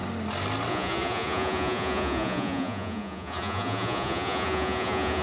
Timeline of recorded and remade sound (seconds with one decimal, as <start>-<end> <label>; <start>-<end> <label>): 0.0-0.7 recorded; 0.7-5.2 remade